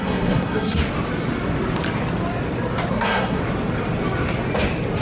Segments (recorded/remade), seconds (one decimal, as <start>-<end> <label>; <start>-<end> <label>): 0.0-0.8 remade; 0.8-2.9 recorded; 2.9-3.4 remade; 3.4-5.0 recorded